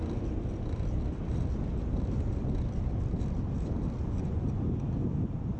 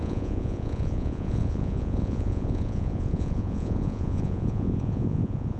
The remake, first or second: second